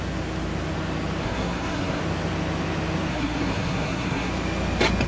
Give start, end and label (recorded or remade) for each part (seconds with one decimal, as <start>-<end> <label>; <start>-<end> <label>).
0.0-1.2 recorded; 1.2-2.0 remade; 2.0-3.1 recorded; 3.1-4.3 remade; 4.3-5.1 recorded